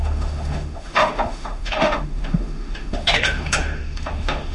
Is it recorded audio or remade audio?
remade